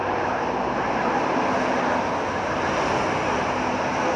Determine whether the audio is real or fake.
real